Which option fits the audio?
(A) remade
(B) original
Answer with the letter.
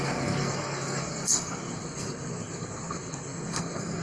A